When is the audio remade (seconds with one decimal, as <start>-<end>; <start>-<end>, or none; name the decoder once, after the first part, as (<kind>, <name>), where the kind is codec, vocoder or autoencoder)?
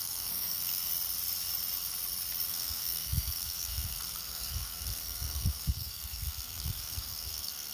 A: 0.0-0.9 (codec, SNAC); 2.5-7.7